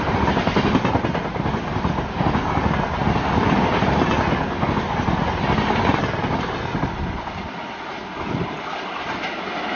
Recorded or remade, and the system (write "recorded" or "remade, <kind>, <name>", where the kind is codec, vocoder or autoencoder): recorded